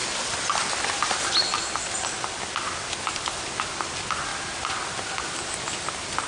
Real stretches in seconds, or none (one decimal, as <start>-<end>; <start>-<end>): 2.0-6.3